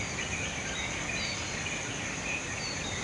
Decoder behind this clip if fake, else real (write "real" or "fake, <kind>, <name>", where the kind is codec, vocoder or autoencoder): real